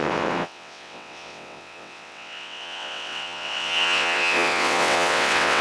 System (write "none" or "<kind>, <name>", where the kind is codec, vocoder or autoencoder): vocoder, WaveNeXt